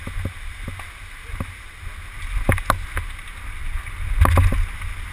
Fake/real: real